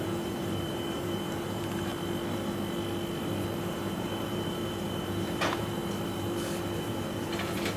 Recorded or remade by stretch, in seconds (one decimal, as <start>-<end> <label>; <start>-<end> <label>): 0.0-1.9 remade; 1.9-3.6 recorded; 3.6-5.8 remade; 5.8-6.6 recorded; 6.6-7.8 remade